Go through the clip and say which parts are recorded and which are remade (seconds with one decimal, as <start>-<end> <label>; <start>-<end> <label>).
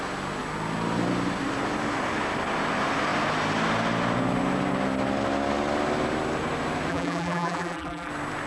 0.0-6.9 recorded; 6.9-8.1 remade; 8.1-8.5 recorded